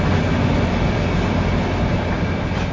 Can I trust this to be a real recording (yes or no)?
yes